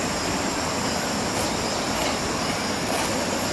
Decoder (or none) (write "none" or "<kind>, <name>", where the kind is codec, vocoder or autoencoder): none